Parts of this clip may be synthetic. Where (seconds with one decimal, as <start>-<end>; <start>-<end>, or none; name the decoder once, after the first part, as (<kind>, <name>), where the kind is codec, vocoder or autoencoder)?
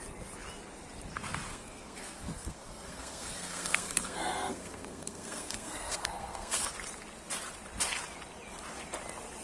1.5-6.7 (codec, SNAC)